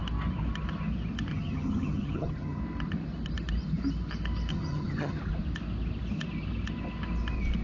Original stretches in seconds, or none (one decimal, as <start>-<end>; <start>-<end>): 0.0-1.3; 2.6-4.5; 5.2-7.6

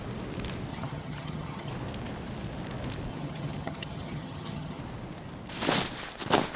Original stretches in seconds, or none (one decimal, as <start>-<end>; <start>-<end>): 0.0-0.7; 1.7-3.1; 4.8-6.6

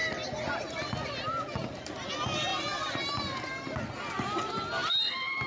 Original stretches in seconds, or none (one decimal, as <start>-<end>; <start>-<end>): 0.0-5.5

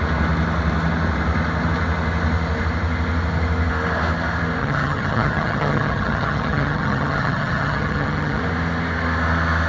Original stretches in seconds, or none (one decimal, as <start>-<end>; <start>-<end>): 0.0-4.6; 8.4-9.7

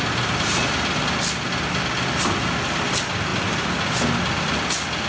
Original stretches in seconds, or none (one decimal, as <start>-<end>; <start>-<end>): 0.0-5.1

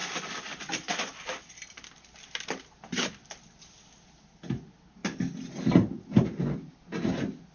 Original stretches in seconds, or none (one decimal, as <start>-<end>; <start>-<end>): 0.0-7.5

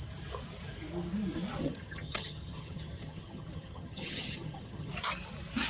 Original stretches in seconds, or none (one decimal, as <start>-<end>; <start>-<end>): 0.0-1.6; 4.9-5.7